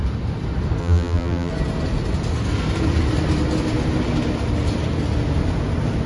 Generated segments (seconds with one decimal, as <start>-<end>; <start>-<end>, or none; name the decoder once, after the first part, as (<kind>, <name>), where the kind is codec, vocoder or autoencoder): 0.8-1.5 (vocoder, BigVGAN v2)

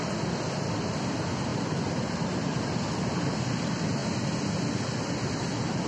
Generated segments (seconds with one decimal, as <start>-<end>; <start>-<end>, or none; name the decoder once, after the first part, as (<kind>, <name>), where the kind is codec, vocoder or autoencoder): 0.0-1.5 (vocoder, BigVGAN v2); 3.4-4.0; 5.0-5.9

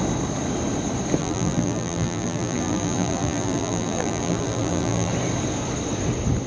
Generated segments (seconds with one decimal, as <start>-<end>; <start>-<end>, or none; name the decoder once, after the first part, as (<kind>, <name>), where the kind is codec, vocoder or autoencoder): 1.2-5.1 (vocoder, BigVGAN v2)

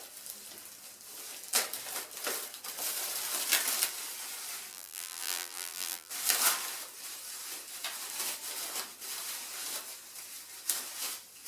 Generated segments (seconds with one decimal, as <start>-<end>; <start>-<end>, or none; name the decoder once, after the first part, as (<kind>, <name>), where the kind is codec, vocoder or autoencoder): 4.7-6.1 (vocoder, BigVGAN v2)

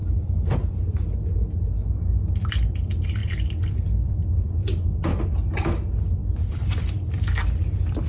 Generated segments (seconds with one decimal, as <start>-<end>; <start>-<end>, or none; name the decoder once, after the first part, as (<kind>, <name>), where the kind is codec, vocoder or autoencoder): none